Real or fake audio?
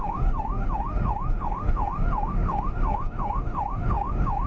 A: fake